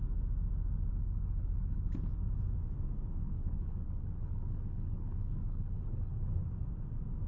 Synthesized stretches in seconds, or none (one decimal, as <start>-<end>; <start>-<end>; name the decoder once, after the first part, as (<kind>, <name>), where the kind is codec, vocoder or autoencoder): 0.9-1.9 (codec, HILCodec); 3.3-6.4